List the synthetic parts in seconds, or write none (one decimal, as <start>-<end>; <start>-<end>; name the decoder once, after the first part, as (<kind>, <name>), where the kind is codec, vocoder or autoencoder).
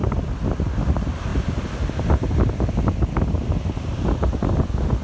none